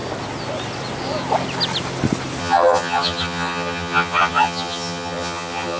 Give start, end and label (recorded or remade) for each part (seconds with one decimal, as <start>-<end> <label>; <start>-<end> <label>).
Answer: 0.0-2.4 recorded; 2.4-5.8 remade